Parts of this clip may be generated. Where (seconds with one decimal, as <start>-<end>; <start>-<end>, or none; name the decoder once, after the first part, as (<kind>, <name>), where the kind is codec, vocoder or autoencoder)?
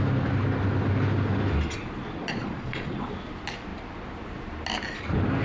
2.2-3.0 (vocoder, Vocos)